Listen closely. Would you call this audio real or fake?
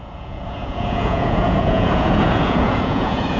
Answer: fake